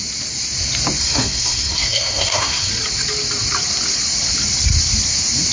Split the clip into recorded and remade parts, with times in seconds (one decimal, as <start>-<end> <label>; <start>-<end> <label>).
0.0-1.0 recorded; 1.0-2.7 remade; 2.7-5.5 recorded